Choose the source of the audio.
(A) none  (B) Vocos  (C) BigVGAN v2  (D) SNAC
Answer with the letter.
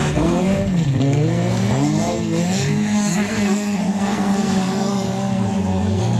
D